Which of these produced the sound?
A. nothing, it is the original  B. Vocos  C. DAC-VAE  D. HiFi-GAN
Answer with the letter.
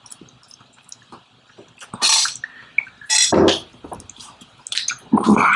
A